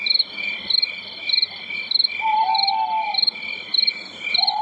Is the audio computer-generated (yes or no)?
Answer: no